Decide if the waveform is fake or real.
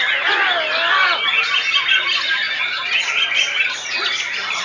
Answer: real